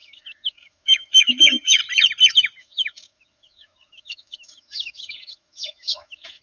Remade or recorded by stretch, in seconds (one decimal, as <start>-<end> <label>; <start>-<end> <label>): 0.0-1.8 remade; 1.8-2.6 recorded; 2.6-6.4 remade